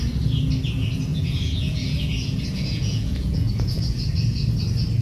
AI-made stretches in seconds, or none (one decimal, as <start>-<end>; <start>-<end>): 1.1-4.1